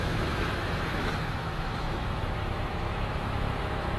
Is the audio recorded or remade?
remade